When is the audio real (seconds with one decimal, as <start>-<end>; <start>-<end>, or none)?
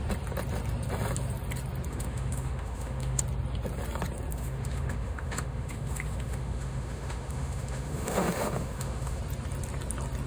0.0-1.9; 3.2-4.3; 9.2-10.3